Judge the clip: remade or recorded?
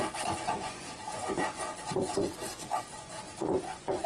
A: remade